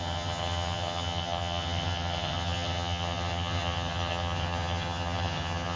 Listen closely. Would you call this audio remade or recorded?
remade